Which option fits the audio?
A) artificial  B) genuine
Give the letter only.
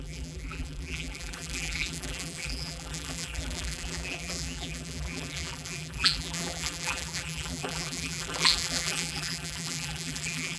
A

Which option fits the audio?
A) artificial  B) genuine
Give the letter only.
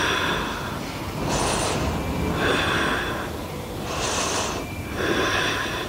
B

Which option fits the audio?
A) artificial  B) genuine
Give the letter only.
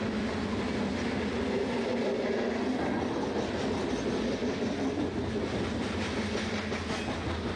B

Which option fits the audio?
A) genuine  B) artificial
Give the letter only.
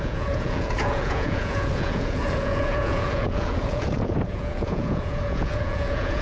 B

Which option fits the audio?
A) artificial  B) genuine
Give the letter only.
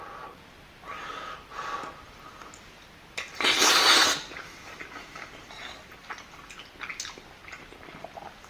B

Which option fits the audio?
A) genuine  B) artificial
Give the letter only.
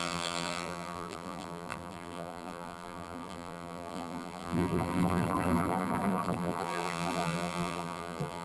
B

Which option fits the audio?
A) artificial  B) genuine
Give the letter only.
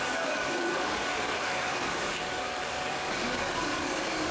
A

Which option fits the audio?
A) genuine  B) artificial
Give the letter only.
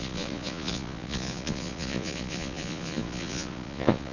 B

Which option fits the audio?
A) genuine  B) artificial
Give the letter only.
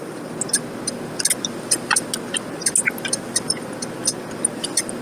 A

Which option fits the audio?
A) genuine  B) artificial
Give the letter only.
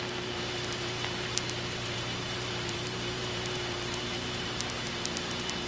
B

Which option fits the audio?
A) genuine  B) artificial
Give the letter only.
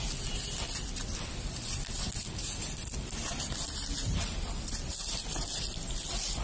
A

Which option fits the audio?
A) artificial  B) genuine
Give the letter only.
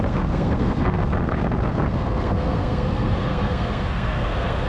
A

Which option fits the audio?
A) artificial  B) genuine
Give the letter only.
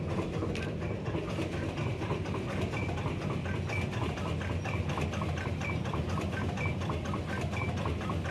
B